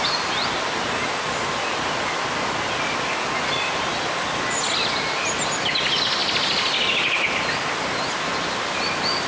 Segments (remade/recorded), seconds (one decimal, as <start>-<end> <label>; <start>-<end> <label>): 0.0-9.3 recorded